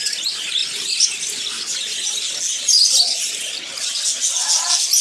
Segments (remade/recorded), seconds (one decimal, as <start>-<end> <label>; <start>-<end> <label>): 0.0-5.0 recorded